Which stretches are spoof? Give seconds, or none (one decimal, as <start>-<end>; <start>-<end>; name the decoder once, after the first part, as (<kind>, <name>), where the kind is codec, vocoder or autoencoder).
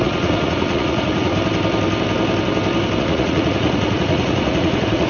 0.0-1.3 (vocoder, Vocos); 3.0-5.1